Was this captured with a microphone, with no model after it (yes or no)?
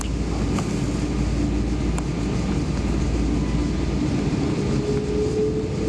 yes